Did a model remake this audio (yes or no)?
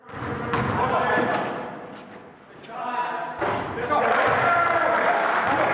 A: no